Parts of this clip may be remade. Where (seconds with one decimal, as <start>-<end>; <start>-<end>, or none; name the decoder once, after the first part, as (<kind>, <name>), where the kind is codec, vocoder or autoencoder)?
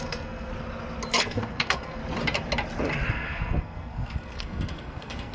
0.0-0.5 (codec, SNAC); 1.2-2.0; 3.1-5.3